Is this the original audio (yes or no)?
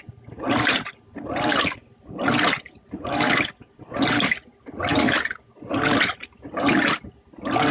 yes